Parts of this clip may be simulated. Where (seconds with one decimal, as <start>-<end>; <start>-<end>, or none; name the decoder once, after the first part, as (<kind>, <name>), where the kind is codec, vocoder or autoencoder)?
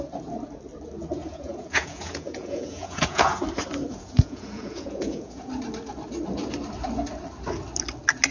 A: 1.2-3.4 (vocoder, Vocos); 3.9-5.5